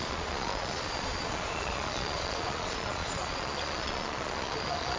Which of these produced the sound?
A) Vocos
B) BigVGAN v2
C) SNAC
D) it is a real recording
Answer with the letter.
A